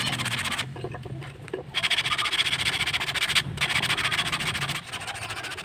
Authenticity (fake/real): real